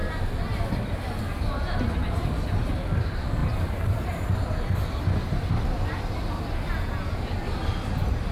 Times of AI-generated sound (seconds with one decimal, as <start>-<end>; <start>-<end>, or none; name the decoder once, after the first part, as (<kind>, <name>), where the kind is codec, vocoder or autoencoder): 6.7-7.3 (vocoder, Vocos)